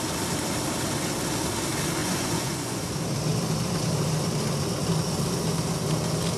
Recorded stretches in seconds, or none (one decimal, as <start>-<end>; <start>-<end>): 0.0-2.0; 2.9-6.4